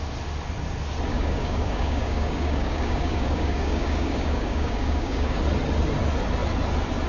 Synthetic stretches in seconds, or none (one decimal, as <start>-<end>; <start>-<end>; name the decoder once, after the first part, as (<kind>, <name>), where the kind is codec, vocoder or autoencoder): 1.1-5.4 (codec, DAC)